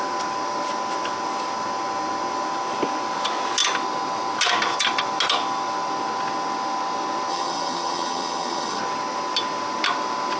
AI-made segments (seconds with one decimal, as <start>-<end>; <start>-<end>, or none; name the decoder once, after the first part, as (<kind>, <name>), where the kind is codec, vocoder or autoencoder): 7.3-8.8 (vocoder, HiFi-GAN)

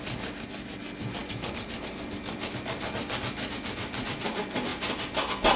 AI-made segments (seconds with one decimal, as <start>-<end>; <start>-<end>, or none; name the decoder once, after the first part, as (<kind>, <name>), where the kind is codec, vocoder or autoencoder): none